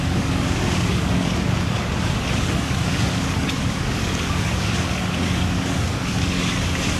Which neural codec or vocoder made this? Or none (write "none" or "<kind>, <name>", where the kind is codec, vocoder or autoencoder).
codec, DAC